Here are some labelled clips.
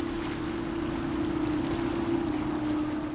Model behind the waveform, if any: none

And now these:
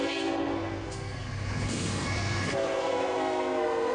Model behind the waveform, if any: codec, SNAC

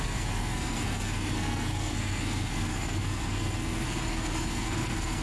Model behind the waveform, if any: codec, SNAC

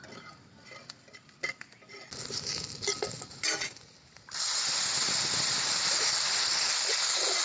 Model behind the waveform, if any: none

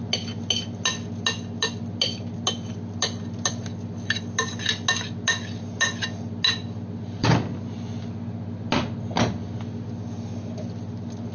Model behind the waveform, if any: none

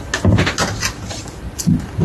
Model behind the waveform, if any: none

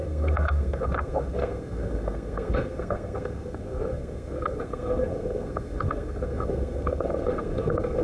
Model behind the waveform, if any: codec, SNAC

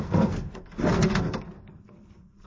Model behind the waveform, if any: codec, SNAC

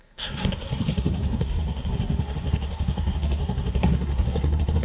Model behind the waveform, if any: codec, SNAC